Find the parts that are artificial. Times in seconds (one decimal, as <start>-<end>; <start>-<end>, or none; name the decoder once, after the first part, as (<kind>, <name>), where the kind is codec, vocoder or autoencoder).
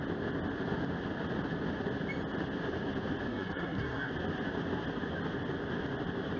3.3-4.1 (codec, SNAC)